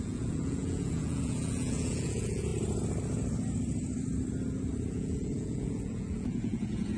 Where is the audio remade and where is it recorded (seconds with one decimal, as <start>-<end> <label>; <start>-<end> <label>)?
0.0-2.5 remade; 2.5-4.9 recorded; 4.9-7.0 remade